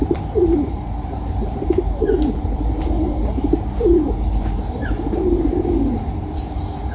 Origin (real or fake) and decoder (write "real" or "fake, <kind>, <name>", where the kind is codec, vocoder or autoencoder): fake, vocoder, BigVGAN v2